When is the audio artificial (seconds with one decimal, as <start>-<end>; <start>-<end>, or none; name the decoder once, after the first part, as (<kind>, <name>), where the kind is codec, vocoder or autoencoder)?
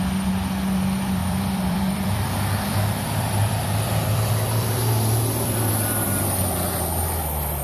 1.2-5.7 (vocoder, BigVGAN v2)